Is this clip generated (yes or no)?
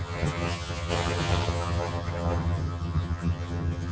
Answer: yes